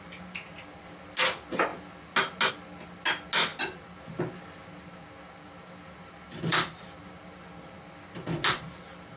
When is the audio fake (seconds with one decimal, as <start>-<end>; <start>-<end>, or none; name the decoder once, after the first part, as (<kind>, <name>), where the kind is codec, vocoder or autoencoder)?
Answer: none